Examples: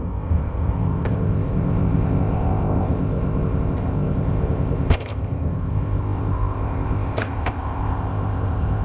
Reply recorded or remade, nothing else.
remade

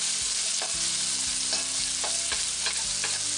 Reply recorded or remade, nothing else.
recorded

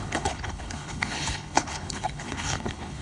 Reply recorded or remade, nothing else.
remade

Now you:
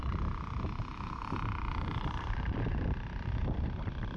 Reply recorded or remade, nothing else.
remade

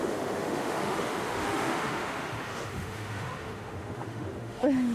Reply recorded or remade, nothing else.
remade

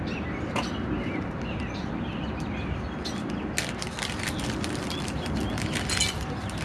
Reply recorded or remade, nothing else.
recorded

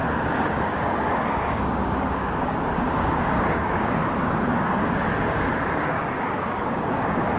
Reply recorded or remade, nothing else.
remade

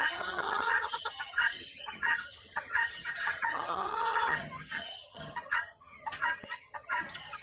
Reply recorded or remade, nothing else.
remade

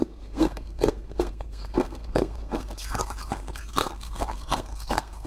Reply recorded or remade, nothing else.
remade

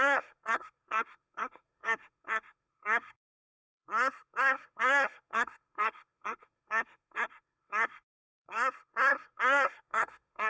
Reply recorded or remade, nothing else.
remade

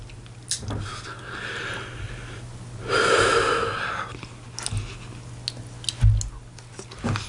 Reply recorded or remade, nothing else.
recorded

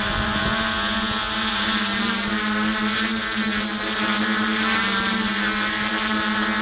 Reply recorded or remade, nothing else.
recorded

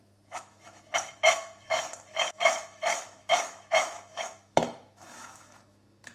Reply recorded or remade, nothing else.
remade